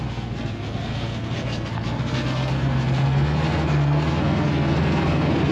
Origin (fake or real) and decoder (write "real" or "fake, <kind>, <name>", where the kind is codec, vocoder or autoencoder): fake, codec, SNAC